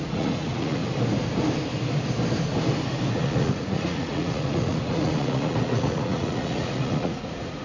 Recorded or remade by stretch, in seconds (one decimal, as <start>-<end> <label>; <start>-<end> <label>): 0.0-0.8 remade; 0.8-3.1 recorded; 3.1-7.6 remade